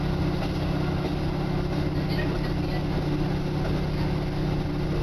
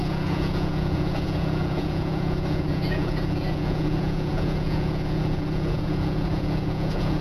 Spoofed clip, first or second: second